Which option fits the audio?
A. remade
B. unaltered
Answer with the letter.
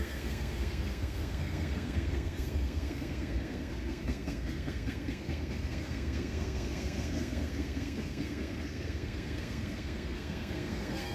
A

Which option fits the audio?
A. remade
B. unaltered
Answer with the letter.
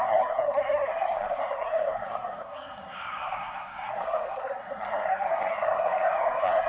A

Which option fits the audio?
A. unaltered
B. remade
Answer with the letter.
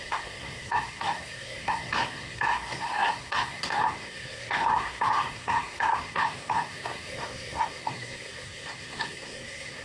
B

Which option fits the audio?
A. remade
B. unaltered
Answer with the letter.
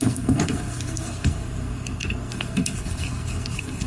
A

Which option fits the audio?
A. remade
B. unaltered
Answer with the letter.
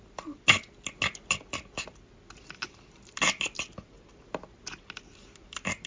B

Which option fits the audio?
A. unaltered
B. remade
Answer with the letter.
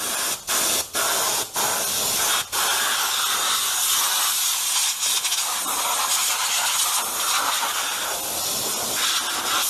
A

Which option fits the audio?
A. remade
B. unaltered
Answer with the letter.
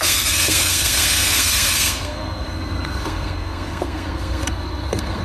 A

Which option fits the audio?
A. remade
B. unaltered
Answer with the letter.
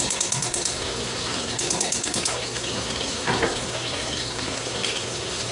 A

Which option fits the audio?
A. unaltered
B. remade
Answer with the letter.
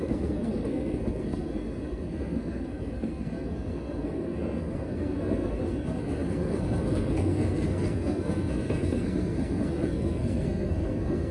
B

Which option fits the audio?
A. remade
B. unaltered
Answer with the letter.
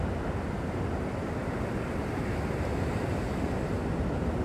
B